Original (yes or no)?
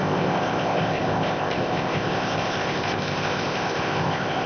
no